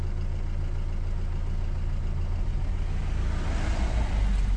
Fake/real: real